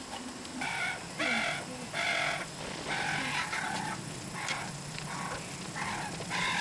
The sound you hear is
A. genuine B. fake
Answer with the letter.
A